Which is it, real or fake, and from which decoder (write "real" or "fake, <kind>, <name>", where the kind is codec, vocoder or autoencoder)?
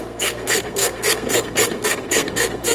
fake, codec, SNAC